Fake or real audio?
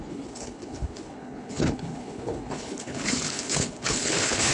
fake